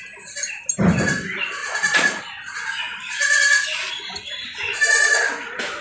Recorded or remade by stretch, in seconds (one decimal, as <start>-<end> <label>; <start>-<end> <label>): 0.0-1.6 recorded; 1.6-2.2 remade; 2.2-5.8 recorded